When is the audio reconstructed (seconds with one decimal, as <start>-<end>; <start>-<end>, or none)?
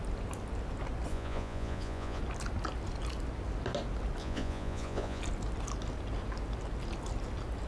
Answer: 1.1-2.2; 4.2-5.2